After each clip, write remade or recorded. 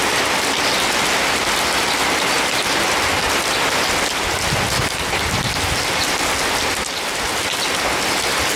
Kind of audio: recorded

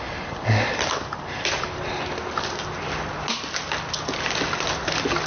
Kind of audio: recorded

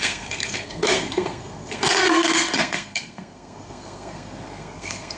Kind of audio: remade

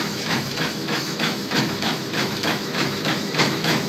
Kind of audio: remade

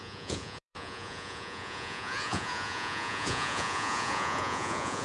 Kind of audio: remade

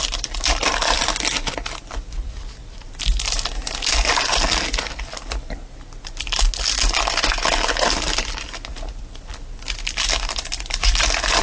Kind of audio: recorded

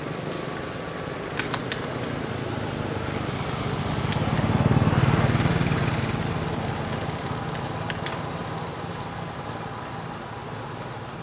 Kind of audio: recorded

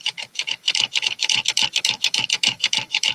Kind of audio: remade